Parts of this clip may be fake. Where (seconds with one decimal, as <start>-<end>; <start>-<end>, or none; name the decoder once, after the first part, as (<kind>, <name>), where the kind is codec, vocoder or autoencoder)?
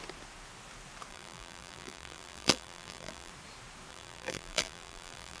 1.1-3.3 (vocoder, BigVGAN v2); 3.9-5.4